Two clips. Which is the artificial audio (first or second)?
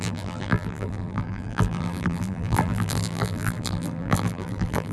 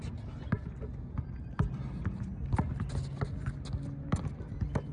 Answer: first